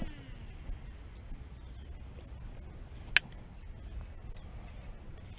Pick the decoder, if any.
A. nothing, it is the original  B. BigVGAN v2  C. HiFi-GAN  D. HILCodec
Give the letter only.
A